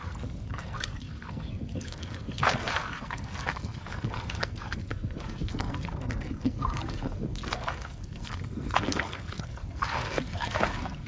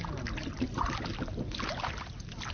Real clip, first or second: second